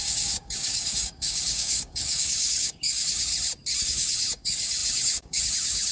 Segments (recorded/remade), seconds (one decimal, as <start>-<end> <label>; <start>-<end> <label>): 0.0-3.3 remade; 3.3-3.8 recorded; 3.8-5.9 remade